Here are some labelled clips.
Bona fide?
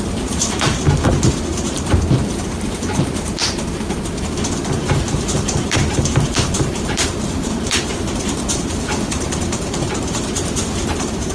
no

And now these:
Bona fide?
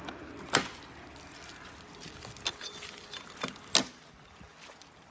yes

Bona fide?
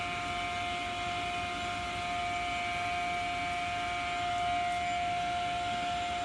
yes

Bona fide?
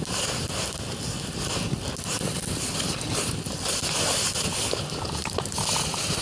yes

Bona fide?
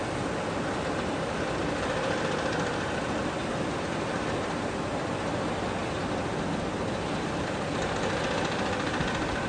yes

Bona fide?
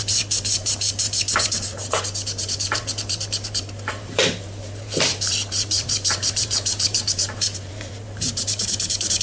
no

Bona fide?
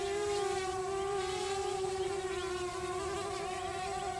no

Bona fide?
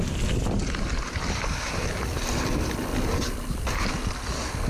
yes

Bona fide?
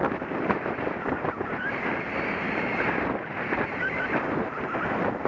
no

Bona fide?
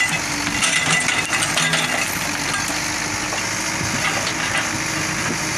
yes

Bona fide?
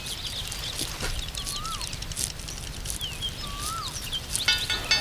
yes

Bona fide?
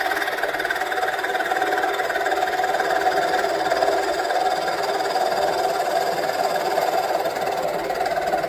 yes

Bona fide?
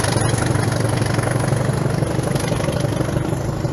yes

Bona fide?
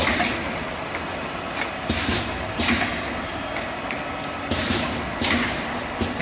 yes